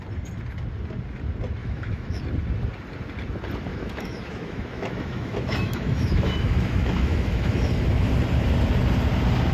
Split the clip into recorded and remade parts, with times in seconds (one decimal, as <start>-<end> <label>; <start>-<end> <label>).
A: 0.0-1.6 recorded; 1.6-2.2 remade; 2.2-3.7 recorded; 3.7-8.1 remade; 8.1-9.5 recorded